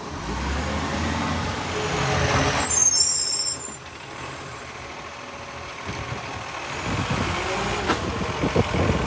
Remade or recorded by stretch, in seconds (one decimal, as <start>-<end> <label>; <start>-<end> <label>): 0.0-2.8 recorded; 2.8-4.6 remade; 4.6-9.1 recorded